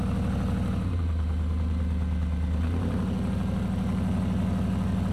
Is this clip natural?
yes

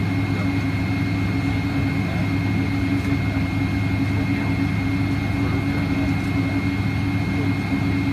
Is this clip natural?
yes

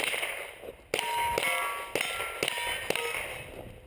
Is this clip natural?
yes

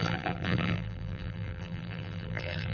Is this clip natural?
no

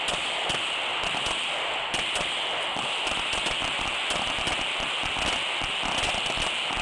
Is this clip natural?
yes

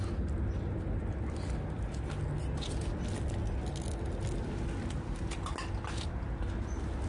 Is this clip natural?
yes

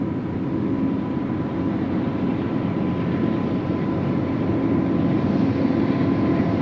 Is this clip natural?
yes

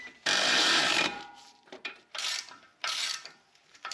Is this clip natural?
no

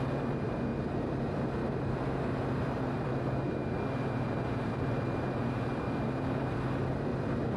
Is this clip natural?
no